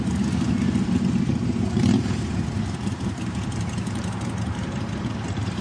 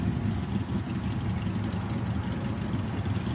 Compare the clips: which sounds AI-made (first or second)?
first